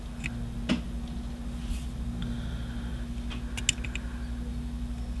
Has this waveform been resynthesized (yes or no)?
no